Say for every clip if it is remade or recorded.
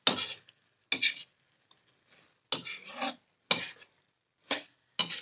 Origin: recorded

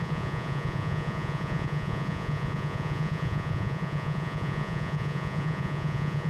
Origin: remade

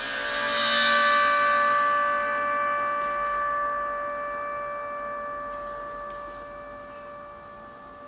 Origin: recorded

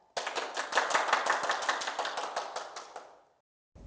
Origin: recorded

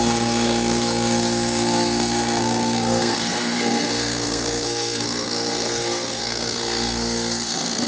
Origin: remade